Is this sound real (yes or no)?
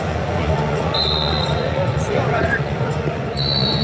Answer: no